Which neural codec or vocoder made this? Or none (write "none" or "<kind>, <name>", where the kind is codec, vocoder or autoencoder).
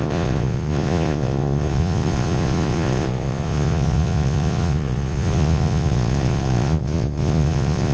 vocoder, Vocos